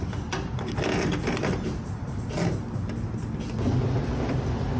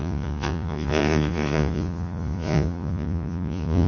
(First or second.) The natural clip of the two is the first